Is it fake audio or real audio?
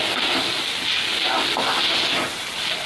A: real